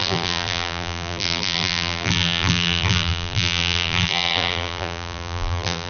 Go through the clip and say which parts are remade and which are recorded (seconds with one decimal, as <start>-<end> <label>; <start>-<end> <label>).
0.0-5.9 remade